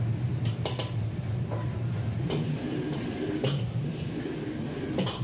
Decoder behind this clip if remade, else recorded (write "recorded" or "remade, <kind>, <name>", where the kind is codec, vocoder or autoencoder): recorded